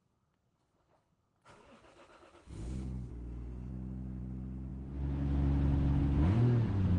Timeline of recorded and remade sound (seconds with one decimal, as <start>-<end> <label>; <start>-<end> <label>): 0.0-3.1 remade; 3.1-7.0 recorded

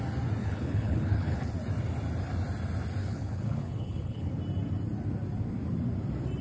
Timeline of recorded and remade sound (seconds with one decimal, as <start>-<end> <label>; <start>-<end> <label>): 0.0-0.4 recorded; 0.4-1.5 remade; 1.5-3.0 recorded; 3.0-4.3 remade; 4.3-6.4 recorded

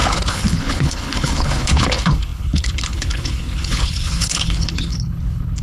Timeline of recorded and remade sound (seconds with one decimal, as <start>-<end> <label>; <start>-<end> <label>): 0.0-5.6 remade

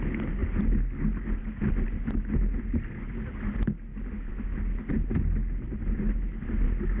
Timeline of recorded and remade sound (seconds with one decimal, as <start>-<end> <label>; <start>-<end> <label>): 0.0-7.0 recorded

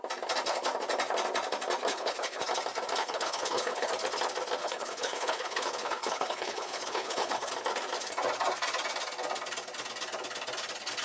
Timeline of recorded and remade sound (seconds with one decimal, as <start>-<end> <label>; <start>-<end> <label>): 0.0-1.9 recorded; 1.9-2.4 remade; 2.4-3.0 recorded; 3.0-3.9 remade; 3.9-4.6 recorded; 4.6-7.5 remade; 7.5-11.0 recorded